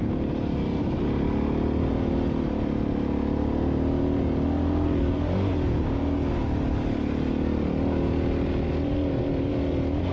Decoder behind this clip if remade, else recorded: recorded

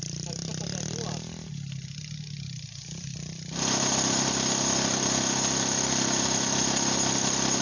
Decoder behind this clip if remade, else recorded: recorded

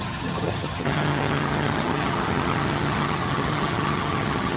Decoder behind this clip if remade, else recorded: remade, vocoder, HiFi-GAN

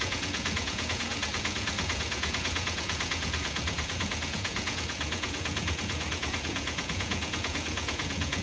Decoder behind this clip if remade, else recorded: remade, vocoder, Vocos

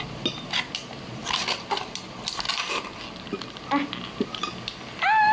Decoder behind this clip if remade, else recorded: recorded